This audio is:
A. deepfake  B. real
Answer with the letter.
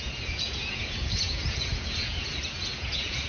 A